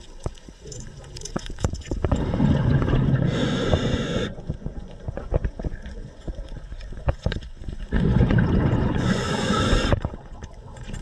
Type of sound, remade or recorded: remade